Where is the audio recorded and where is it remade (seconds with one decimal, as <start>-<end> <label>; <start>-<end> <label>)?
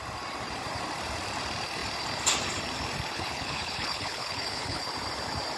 0.0-3.1 recorded; 3.1-4.9 remade; 4.9-5.6 recorded